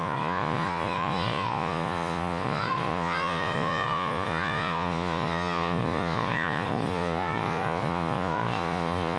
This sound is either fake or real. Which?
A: fake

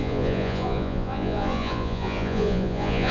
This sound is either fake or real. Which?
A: fake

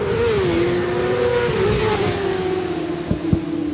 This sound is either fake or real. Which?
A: real